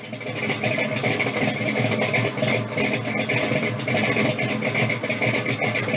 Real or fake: real